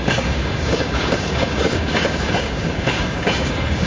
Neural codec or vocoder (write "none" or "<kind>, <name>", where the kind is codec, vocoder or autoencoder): codec, DAC